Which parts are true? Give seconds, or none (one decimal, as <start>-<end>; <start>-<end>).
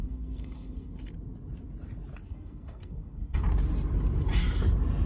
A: 1.1-2.3; 3.4-5.1